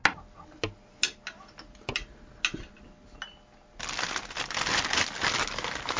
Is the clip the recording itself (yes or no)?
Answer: yes